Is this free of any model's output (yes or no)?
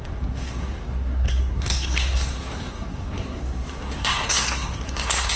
no